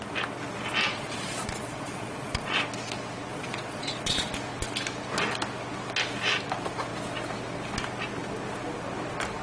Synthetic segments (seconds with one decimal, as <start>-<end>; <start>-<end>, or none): 0.9-2.6; 3.3-4.3